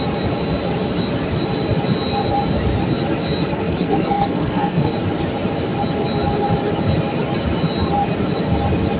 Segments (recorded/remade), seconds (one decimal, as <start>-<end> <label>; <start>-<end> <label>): 0.0-3.5 recorded; 3.5-4.9 remade; 4.9-9.0 recorded